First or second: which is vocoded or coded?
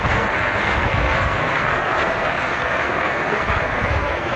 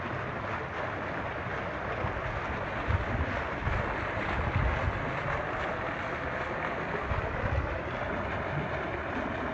first